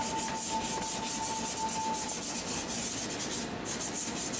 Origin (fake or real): real